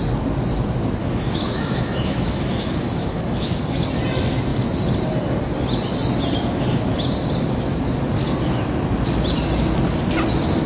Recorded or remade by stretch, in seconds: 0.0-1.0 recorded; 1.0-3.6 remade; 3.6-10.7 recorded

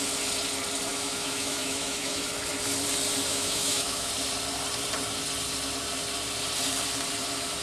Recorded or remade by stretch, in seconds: 0.0-0.9 recorded; 0.9-2.3 remade; 2.3-3.3 recorded; 3.3-4.1 remade; 4.1-7.6 recorded